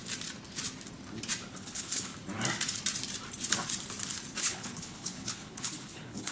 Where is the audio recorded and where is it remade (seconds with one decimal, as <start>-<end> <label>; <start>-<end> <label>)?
0.0-1.5 recorded; 1.5-2.1 remade; 2.1-4.4 recorded; 4.4-6.3 remade